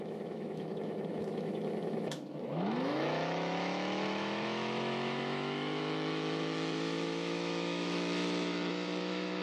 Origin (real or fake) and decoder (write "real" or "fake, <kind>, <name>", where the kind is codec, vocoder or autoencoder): fake, autoencoder, DAC-VAE